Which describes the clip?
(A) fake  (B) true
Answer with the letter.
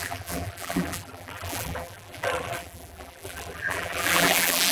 A